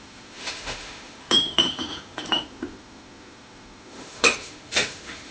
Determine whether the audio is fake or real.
fake